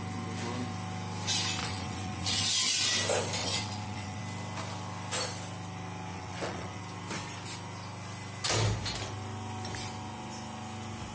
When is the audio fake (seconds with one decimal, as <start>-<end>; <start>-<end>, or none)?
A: 1.6-2.4; 3.4-4.2; 6.1-6.8